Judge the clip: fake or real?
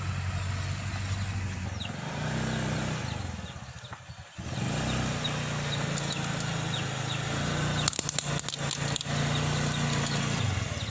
real